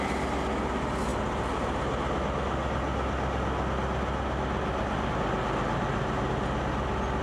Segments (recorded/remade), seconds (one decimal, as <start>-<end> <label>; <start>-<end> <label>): 0.0-7.2 recorded